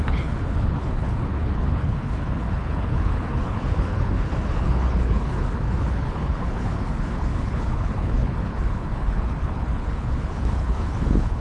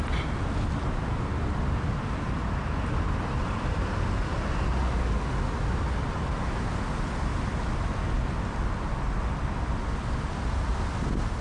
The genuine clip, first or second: second